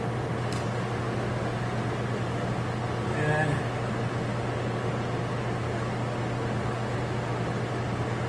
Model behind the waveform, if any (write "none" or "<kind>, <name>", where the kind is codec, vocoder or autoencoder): none